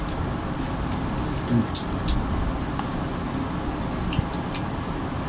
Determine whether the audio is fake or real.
real